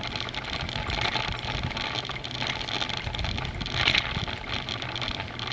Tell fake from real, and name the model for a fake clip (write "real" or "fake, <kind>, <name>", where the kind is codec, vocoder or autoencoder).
real